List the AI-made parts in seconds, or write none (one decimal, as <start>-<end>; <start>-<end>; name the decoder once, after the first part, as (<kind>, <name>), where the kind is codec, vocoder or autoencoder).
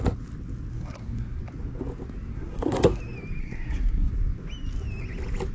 0.7-1.4 (codec, SNAC); 2.3-3.0; 3.4-4.1